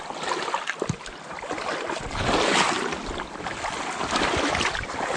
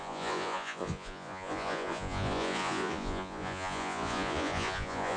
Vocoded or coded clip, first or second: second